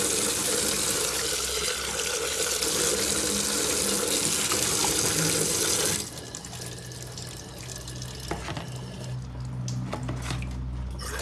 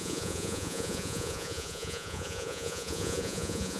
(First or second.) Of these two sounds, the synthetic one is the second